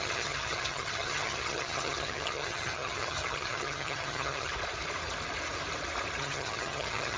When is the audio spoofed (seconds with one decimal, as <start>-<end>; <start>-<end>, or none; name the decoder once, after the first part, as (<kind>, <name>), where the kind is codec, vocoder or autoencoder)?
0.0-4.5 (vocoder, HiFi-GAN); 6.2-7.2